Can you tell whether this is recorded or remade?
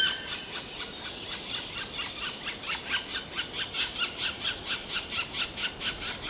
recorded